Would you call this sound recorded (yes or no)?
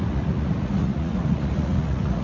no